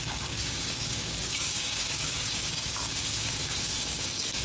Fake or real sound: fake